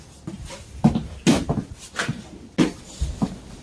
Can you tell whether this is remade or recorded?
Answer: recorded